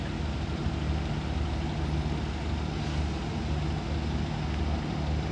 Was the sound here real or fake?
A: real